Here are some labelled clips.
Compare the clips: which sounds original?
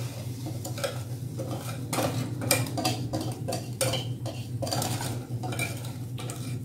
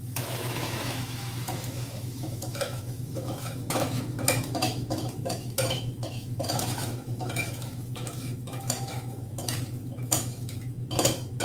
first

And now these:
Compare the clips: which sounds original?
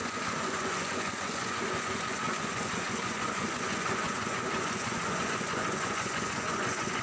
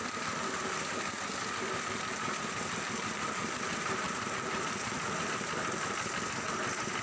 second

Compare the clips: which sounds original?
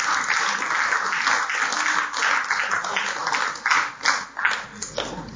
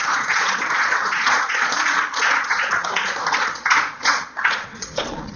first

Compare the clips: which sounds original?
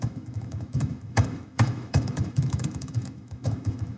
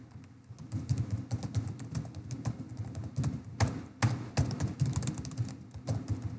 second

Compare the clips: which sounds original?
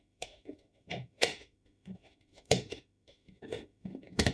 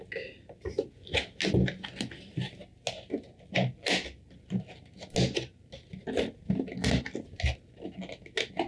second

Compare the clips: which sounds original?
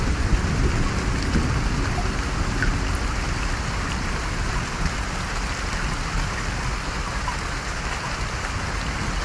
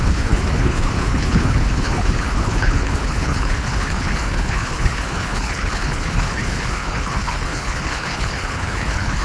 first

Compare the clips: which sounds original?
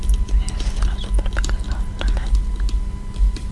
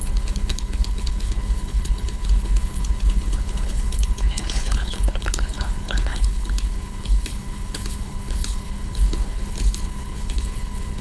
first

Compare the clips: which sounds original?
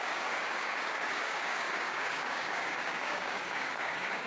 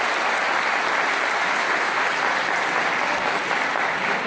second